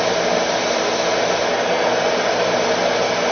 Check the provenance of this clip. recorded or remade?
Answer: recorded